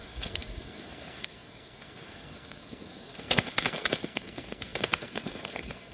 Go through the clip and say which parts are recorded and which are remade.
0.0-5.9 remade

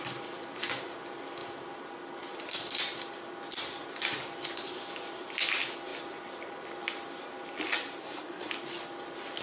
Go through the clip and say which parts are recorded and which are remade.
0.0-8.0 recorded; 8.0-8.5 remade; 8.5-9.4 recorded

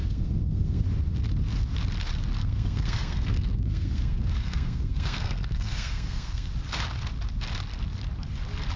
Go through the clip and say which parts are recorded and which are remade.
0.0-0.8 remade; 0.8-2.4 recorded; 2.4-6.5 remade; 6.5-8.8 recorded

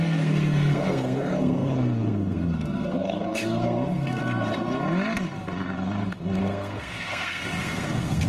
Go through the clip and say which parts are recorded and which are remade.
0.0-4.2 remade; 4.2-6.4 recorded; 6.4-8.3 remade

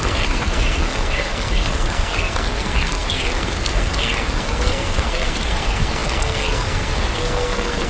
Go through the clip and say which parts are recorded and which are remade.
0.0-7.9 remade

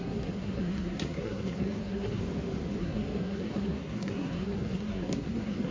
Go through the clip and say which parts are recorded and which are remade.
0.0-2.2 remade; 2.2-2.8 recorded; 2.8-5.7 remade